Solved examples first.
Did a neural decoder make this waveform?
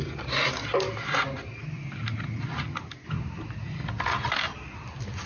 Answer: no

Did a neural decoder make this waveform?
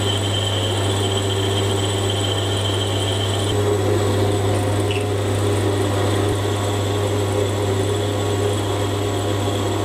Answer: no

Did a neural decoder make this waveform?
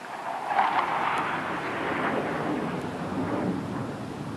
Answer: no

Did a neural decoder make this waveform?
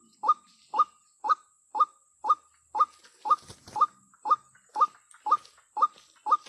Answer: no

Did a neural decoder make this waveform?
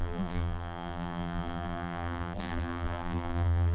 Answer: yes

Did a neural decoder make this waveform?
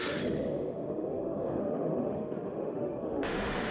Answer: yes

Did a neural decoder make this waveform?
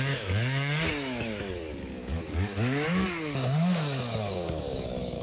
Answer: yes